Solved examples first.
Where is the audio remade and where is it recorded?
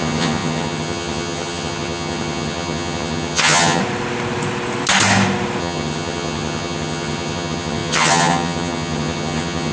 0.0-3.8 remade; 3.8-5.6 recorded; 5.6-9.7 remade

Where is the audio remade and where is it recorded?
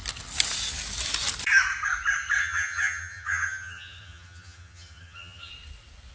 0.0-2.4 recorded; 2.4-5.5 remade; 5.5-6.1 recorded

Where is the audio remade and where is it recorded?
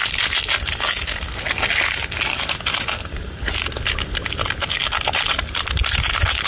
0.0-6.5 recorded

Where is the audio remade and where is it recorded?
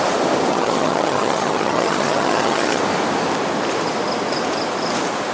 0.0-0.5 recorded; 0.5-2.8 remade; 2.8-5.3 recorded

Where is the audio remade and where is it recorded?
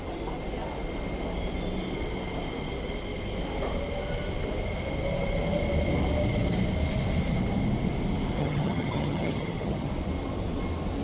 0.0-8.4 recorded; 8.4-9.9 remade; 9.9-11.0 recorded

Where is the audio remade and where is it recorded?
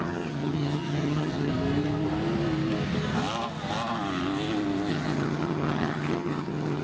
0.0-1.5 remade; 1.5-4.9 recorded; 4.9-6.8 remade